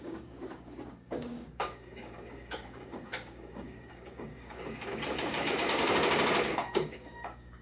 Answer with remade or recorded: remade